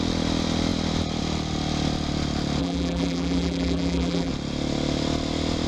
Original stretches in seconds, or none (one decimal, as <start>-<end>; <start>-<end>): 0.0-2.6; 4.3-5.7